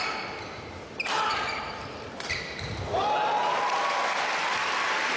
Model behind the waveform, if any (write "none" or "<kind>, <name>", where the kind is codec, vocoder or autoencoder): none